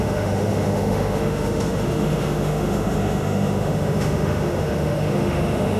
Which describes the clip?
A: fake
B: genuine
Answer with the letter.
A